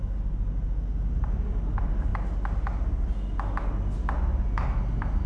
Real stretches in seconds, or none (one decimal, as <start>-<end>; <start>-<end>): 0.0-5.3